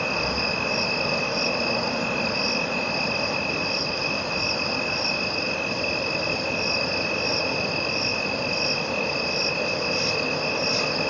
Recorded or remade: recorded